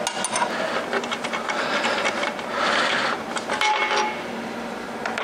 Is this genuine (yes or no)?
yes